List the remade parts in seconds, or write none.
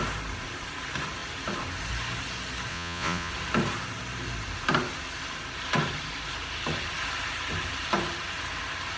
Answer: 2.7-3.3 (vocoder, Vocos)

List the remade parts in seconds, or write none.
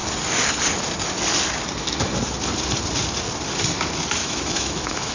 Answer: 4.2-5.1 (autoencoder, DAC-VAE)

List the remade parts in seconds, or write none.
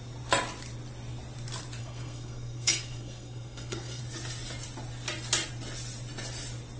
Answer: 1.8-4.0 (codec, SNAC)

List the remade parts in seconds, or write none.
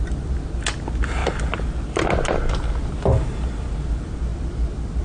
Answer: none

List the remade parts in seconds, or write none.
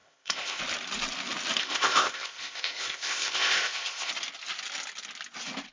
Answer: 0.0-0.6 (codec, ZipCodec); 1.6-4.1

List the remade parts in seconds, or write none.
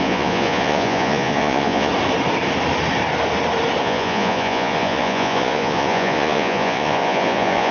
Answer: 0.0-1.9 (vocoder, Vocos); 3.8-7.7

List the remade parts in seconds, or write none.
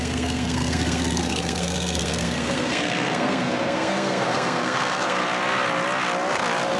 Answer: 0.0-5.2 (codec, SNAC)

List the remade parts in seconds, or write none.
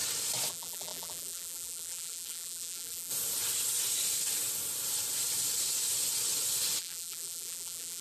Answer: 0.5-3.1 (vocoder, BigVGAN v2); 6.8-8.0